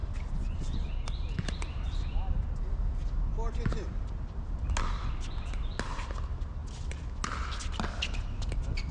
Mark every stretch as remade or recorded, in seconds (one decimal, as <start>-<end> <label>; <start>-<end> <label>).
0.0-8.9 recorded